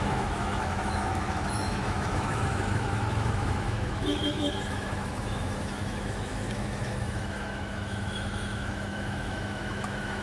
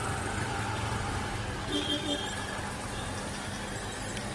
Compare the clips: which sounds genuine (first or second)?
second